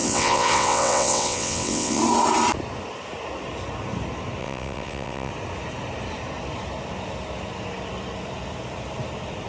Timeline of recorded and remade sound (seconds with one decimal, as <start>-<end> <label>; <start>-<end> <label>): 0.0-2.0 remade; 2.0-4.4 recorded; 4.4-5.3 remade; 5.3-9.5 recorded